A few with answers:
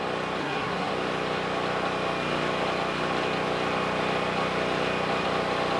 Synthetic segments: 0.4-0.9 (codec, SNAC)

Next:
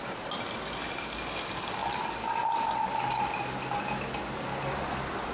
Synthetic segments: none

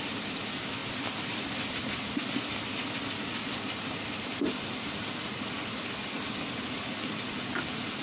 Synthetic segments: none

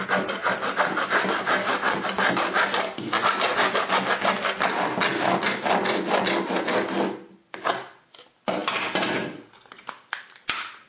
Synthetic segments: none

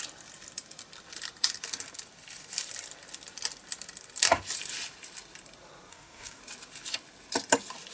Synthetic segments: 5.9-6.4 (codec, DAC)

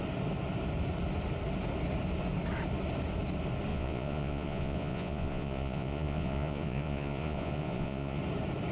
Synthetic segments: 3.7-8.2 (vocoder, Vocos)

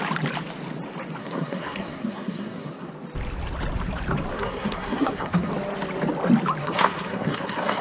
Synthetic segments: 1.2-2.9 (codec, SNAC); 4.3-5.5; 6.6-7.8